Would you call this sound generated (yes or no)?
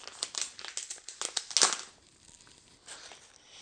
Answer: no